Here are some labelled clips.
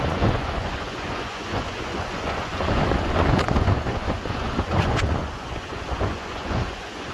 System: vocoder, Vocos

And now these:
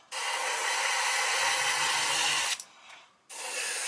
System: none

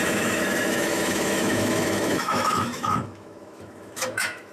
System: autoencoder, DAC-VAE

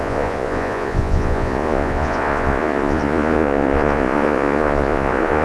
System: vocoder, Vocos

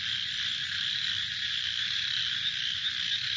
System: none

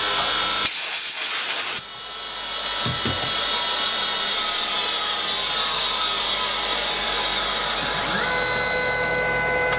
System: none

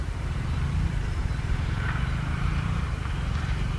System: vocoder, BigVGAN v2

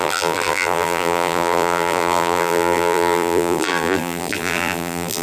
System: vocoder, BigVGAN v2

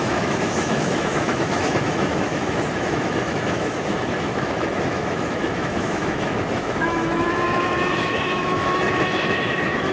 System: autoencoder, DAC-VAE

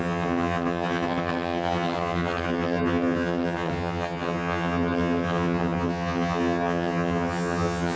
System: vocoder, HiFi-GAN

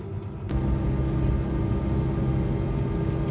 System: none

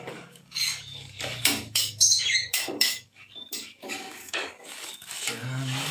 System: codec, DAC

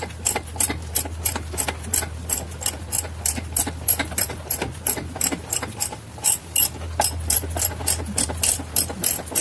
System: none